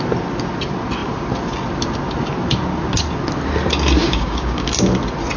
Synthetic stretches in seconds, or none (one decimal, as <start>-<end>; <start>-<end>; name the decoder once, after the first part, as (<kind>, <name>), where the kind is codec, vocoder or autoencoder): 4.0-4.7 (codec, DAC)

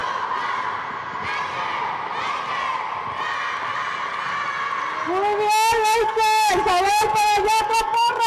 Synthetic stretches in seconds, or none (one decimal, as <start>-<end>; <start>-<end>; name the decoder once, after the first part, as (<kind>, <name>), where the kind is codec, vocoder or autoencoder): 5.7-8.3 (codec, DAC)

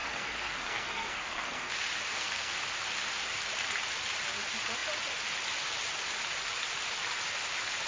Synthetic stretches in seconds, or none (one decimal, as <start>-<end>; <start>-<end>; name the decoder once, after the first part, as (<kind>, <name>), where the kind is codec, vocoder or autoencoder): 0.0-1.7 (codec, SNAC); 2.1-2.6

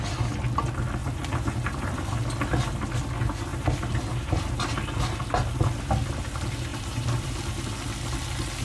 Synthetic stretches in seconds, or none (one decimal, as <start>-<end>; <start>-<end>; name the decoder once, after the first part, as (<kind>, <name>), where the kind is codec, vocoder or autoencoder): 1.0-2.2 (vocoder, BigVGAN v2); 3.5-4.4; 6.7-7.4

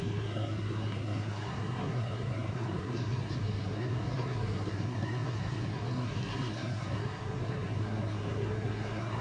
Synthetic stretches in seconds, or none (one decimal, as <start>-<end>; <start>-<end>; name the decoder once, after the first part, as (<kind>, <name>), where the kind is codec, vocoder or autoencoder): 0.0-9.2 (codec, SNAC)

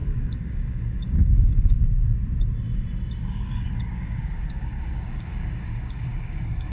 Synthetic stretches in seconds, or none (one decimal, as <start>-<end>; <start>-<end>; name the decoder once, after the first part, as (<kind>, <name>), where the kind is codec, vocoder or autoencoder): 0.0-1.8 (codec, DAC); 3.2-6.7

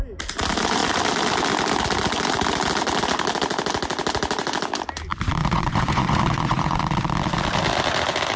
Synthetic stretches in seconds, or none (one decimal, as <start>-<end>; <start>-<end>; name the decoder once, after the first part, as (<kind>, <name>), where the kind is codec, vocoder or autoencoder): 5.4-6.8 (vocoder, Vocos)